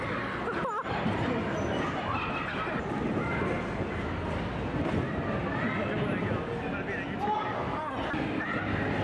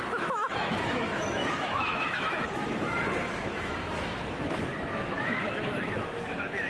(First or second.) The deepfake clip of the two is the second